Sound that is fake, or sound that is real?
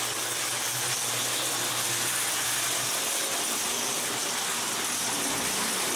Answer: real